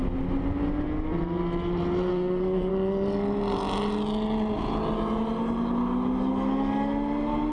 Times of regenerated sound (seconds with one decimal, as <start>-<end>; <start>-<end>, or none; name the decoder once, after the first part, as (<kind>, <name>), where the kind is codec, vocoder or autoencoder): 2.1-2.7 (codec, SNAC)